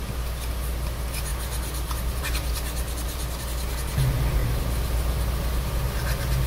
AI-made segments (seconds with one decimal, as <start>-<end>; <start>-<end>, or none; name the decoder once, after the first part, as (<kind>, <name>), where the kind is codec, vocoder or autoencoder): none